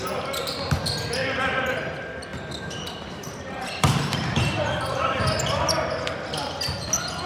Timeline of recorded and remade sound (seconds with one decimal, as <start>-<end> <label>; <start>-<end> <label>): 0.0-2.3 recorded; 2.3-5.2 remade; 5.2-7.3 recorded